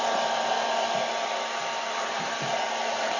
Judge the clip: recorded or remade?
recorded